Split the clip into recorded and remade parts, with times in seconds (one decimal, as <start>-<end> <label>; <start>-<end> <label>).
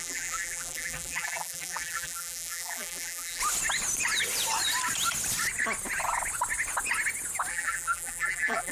0.0-3.4 remade; 3.4-7.5 recorded; 7.5-8.7 remade